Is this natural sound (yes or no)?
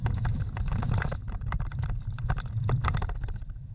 no